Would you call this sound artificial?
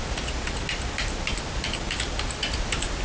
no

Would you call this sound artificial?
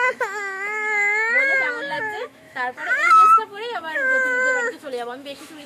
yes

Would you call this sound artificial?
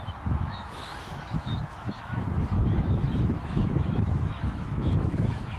yes